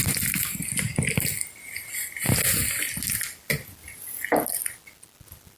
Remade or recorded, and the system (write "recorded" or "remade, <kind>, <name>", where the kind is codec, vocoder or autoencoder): recorded